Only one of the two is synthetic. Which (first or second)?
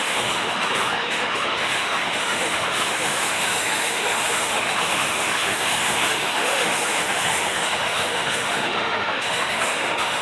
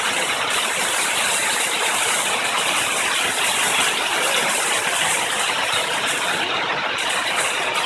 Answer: first